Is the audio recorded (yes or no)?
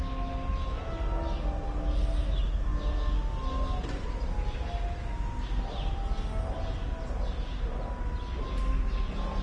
yes